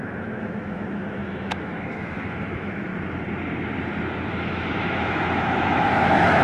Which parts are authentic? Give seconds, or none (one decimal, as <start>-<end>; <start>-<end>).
2.9-4.3